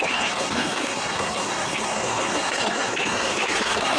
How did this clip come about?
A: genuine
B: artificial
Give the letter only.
B